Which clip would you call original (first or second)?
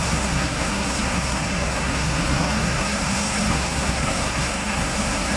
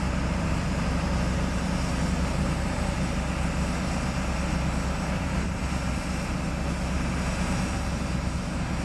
second